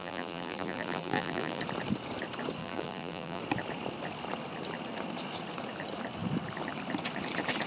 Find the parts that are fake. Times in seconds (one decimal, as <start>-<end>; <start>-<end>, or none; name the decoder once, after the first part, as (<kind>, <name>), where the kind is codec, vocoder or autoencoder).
0.0-1.6 (vocoder, BigVGAN v2); 2.6-3.4